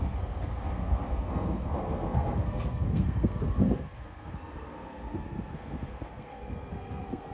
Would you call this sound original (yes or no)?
no